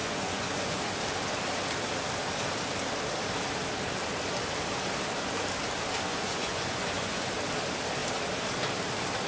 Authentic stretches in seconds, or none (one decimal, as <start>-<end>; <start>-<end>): 0.8-6.1; 7.3-9.3

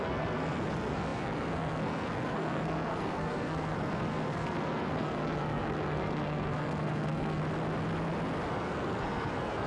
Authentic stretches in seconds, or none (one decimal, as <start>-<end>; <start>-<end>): 7.4-8.5